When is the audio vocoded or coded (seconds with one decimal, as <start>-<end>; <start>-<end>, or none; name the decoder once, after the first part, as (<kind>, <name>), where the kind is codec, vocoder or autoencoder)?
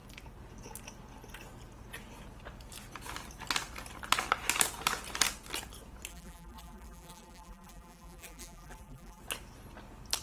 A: 6.1-9.2 (vocoder, BigVGAN v2)